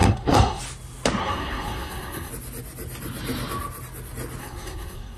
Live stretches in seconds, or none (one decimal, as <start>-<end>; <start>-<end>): 0.6-1.2; 2.3-4.4